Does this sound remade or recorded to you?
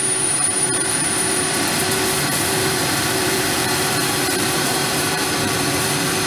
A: remade